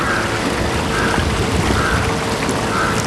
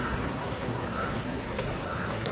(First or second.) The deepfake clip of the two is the second